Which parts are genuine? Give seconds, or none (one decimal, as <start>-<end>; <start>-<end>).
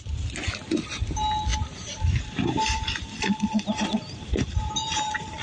0.0-1.5; 4.7-5.4